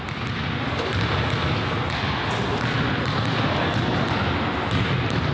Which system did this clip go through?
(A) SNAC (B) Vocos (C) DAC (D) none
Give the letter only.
D